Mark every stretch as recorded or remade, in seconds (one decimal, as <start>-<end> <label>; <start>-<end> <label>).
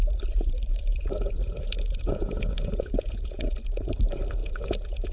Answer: 0.0-0.9 recorded; 0.9-3.9 remade; 3.9-4.4 recorded; 4.4-5.1 remade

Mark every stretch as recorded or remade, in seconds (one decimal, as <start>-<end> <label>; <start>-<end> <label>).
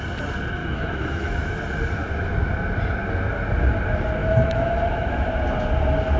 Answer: 0.0-0.6 recorded; 0.6-1.5 remade; 1.5-4.2 recorded; 4.2-5.3 remade; 5.3-6.2 recorded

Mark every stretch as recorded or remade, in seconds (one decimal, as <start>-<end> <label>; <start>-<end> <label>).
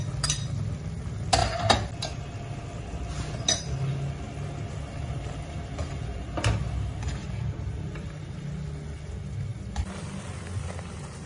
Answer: 0.0-5.8 recorded; 5.8-8.5 remade; 8.5-9.5 recorded; 9.5-11.3 remade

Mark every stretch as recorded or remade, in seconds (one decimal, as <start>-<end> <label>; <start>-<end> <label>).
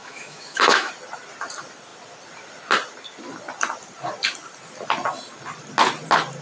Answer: 0.0-0.9 remade; 0.9-6.4 recorded